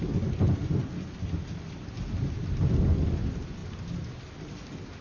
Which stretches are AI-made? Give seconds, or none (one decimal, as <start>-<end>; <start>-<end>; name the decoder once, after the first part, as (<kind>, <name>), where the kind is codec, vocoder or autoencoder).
none